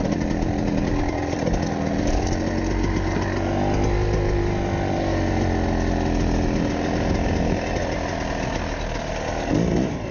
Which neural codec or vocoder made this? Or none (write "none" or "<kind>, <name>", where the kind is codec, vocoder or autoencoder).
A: none